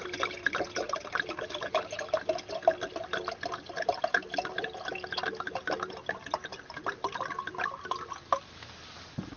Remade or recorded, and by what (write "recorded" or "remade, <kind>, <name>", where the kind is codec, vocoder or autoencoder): recorded